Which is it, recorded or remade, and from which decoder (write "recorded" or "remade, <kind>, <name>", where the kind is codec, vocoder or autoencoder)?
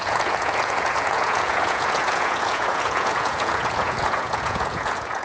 remade, vocoder, Vocos